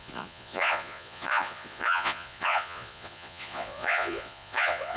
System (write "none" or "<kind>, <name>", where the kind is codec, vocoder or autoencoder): vocoder, Vocos